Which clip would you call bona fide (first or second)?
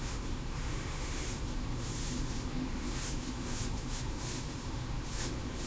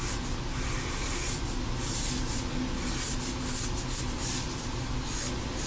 second